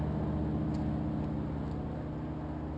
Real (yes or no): yes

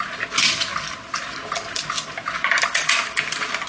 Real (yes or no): yes